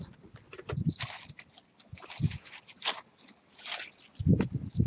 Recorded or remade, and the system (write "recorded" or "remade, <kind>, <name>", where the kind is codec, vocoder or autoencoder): recorded